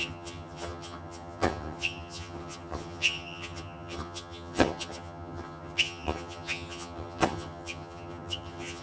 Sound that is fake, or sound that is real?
fake